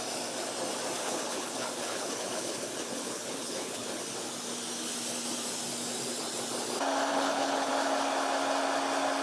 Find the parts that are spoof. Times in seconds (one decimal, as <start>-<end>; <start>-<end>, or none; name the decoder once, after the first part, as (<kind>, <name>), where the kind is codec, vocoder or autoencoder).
1.0-4.0 (codec, HILCodec); 7.1-7.7